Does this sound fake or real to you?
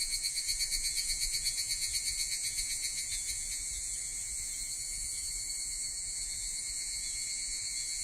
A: fake